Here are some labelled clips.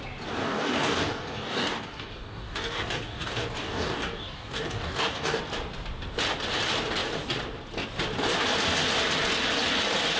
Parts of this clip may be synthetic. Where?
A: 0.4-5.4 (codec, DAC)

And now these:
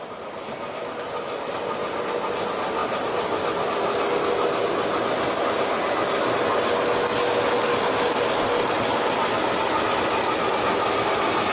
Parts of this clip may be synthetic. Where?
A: none